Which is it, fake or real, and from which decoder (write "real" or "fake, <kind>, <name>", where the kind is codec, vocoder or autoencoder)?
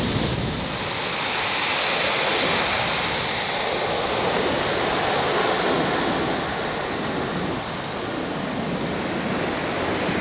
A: real